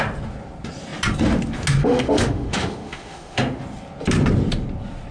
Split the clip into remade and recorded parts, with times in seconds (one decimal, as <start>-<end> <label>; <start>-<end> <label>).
0.0-1.8 recorded; 1.8-3.6 remade; 3.6-5.1 recorded